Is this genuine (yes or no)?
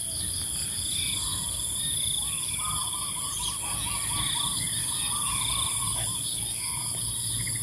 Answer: yes